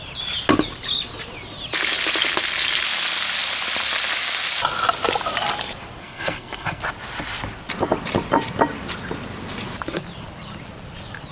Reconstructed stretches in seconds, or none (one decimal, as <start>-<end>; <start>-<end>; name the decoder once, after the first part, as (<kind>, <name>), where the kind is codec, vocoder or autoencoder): 6.0-6.8 (codec, SNAC)